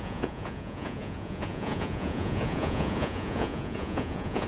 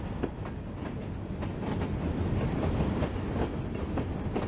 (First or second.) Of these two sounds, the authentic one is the second